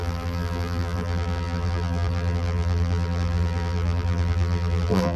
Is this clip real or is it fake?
fake